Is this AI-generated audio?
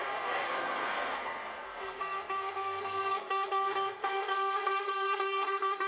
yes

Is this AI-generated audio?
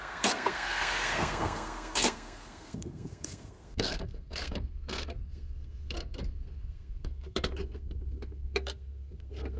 yes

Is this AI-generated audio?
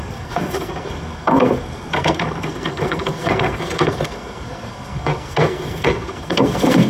yes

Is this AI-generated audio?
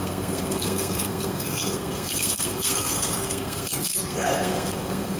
yes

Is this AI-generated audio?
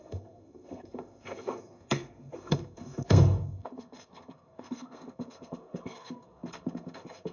yes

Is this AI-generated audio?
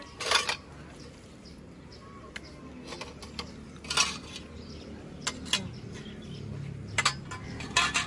no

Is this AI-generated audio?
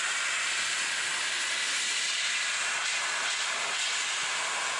no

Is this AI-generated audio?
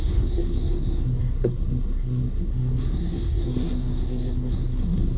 yes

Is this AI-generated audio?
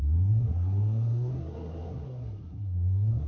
yes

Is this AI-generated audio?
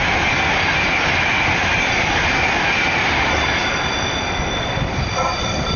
no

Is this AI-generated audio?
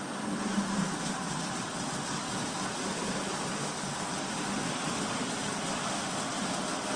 no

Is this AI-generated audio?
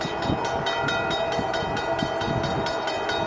no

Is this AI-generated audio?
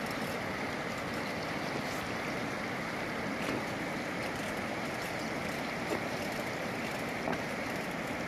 no